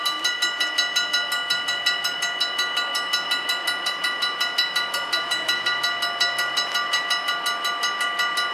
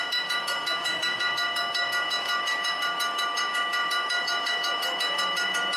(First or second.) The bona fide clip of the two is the first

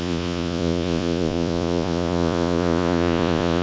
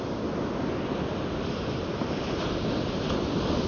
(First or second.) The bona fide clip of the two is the second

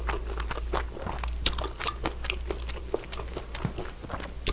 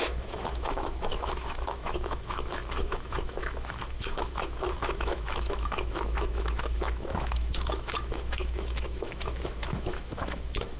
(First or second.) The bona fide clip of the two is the first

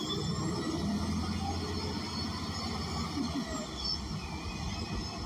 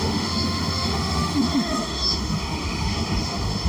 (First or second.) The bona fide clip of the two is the first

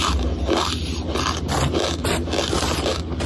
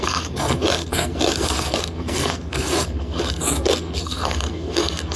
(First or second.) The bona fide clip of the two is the first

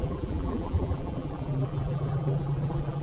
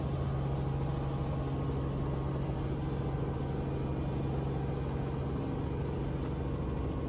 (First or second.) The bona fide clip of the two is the second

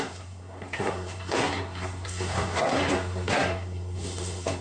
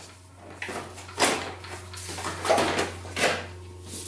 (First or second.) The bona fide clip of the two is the second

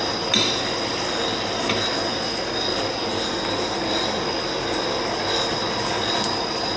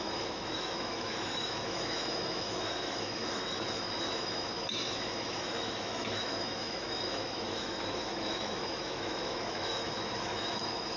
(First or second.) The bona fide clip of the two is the first